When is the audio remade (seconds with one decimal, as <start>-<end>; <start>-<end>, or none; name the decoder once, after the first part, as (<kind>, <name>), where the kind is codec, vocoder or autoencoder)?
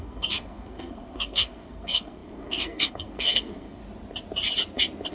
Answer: 0.0-3.8 (codec, SNAC)